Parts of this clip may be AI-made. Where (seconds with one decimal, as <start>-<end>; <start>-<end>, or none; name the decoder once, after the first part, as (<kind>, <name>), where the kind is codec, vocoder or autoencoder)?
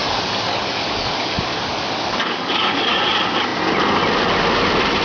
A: 0.0-3.0 (codec, DAC)